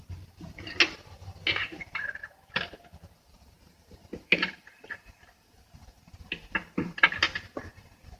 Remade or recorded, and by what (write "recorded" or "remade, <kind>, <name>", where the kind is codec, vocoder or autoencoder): remade, vocoder, BigVGAN v2